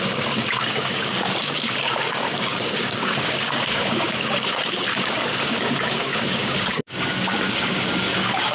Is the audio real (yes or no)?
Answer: no